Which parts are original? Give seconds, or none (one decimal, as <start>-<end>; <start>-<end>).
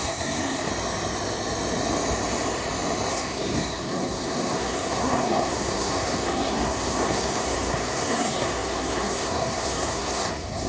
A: 0.7-3.1